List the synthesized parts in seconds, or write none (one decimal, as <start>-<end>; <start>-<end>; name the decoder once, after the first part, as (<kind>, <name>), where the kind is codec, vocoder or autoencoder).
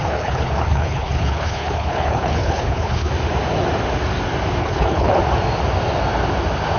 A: 0.0-3.1 (codec, HILCodec); 4.6-5.2